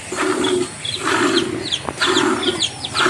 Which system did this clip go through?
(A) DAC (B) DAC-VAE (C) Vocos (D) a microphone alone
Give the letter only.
D